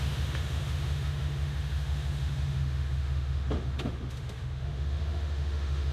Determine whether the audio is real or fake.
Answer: fake